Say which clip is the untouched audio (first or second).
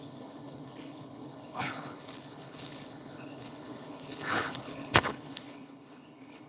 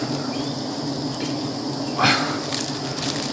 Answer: second